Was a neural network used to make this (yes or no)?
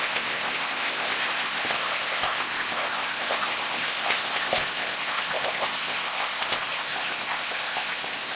yes